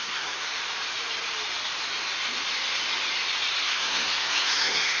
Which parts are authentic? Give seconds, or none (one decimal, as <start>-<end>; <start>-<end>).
0.6-3.6